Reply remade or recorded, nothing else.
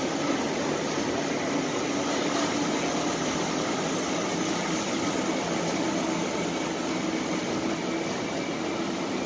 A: recorded